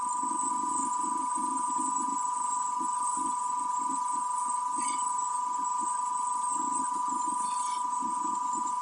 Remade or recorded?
recorded